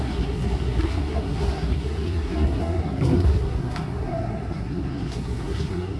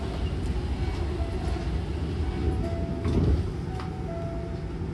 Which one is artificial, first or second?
first